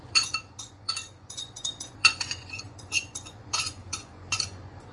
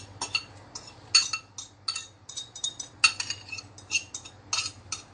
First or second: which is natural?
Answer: second